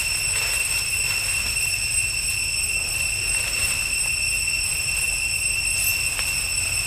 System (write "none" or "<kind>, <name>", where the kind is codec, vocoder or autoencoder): none